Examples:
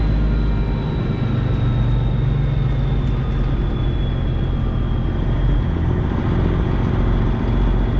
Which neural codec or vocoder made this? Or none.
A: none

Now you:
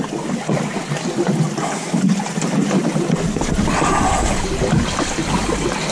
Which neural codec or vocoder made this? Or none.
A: none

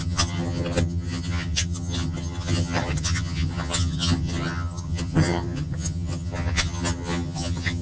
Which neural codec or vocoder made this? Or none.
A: vocoder, HiFi-GAN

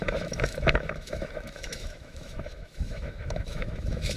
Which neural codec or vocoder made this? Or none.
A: autoencoder, DAC-VAE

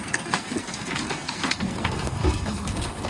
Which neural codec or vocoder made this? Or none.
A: codec, SNAC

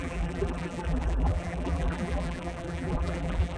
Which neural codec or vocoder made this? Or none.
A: vocoder, BigVGAN v2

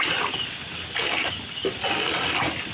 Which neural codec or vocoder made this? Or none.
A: none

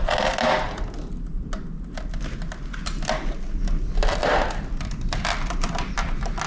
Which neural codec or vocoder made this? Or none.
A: none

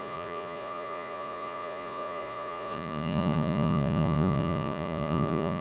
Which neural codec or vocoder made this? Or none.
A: vocoder, Vocos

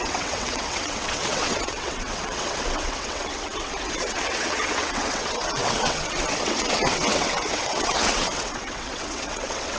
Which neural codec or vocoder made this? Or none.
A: vocoder, WaveNeXt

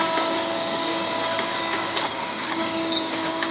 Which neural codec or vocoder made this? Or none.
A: codec, DAC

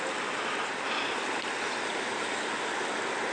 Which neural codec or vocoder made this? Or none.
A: none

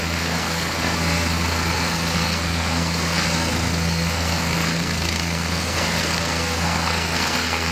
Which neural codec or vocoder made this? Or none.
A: codec, SNAC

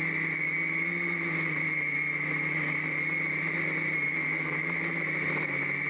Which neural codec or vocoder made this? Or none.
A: none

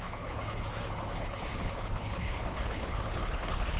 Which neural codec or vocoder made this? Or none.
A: codec, HILCodec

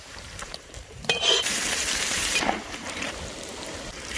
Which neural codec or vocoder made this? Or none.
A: vocoder, BigVGAN v2